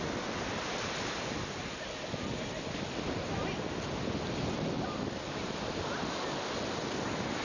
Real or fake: real